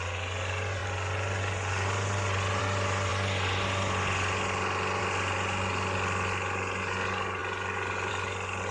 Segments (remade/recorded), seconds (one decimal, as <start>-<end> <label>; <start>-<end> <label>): 0.0-8.7 recorded